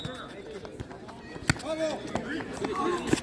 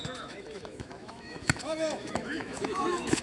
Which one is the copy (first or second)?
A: second